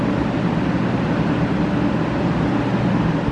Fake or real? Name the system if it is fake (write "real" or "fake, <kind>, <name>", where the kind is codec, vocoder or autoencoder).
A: real